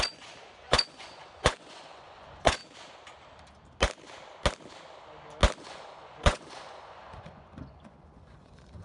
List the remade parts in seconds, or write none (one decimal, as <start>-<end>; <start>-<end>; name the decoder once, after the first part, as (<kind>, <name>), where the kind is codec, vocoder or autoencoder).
0.0-2.6 (vocoder, Vocos); 5.6-8.8